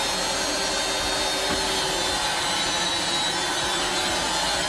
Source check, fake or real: real